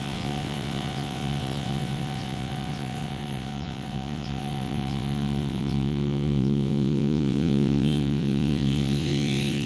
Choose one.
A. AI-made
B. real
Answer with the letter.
A